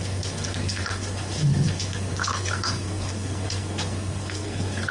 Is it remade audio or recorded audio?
remade